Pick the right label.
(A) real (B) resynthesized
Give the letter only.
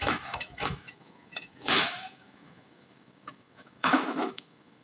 B